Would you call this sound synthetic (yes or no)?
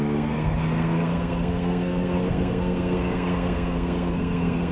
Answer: yes